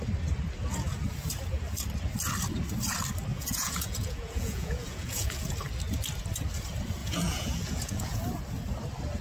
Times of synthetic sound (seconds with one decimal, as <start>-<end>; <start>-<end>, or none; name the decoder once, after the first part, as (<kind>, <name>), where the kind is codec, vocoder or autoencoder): 3.3-5.5 (vocoder, Vocos); 7.0-8.2